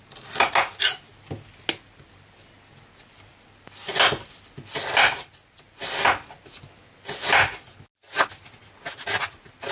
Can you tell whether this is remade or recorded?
recorded